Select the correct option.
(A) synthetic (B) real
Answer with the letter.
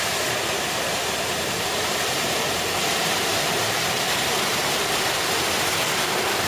A